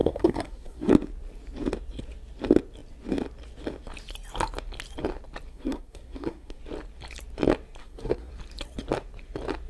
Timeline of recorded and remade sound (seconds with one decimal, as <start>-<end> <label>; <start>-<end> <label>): 0.0-0.9 remade; 0.9-5.5 recorded; 5.5-6.6 remade; 6.6-7.8 recorded; 7.8-8.3 remade; 8.3-9.7 recorded